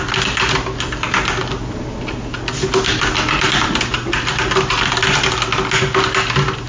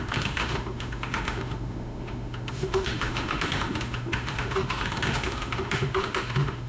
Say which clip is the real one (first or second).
first